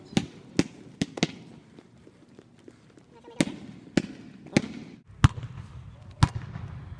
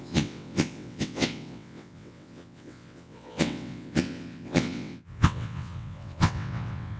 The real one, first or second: first